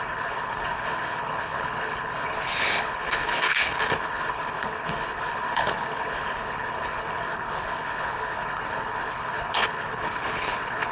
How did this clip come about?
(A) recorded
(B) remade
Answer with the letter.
B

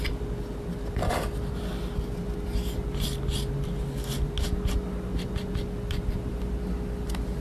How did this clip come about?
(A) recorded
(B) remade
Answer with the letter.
A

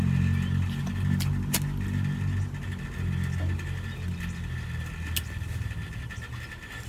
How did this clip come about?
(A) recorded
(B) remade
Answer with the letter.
A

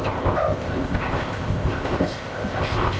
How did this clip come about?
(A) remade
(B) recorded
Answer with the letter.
A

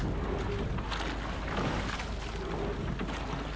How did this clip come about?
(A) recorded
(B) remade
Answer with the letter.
A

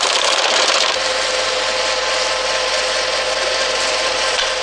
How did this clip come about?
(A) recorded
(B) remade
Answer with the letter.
B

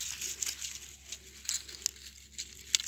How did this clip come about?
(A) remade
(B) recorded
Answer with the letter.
B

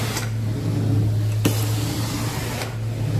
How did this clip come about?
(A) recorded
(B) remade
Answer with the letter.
A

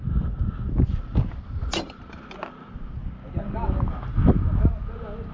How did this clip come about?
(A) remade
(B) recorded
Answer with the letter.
B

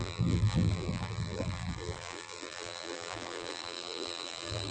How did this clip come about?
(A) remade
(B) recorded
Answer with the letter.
A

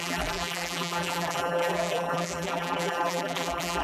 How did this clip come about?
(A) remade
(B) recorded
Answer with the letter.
A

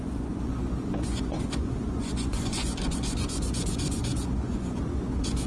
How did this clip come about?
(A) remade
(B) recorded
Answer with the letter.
A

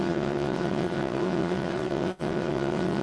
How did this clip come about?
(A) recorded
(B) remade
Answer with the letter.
B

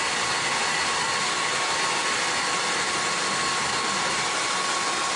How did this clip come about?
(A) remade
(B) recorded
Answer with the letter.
B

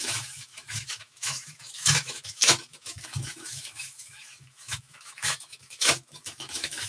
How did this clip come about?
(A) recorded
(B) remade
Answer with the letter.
B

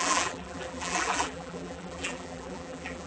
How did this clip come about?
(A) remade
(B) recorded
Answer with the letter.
A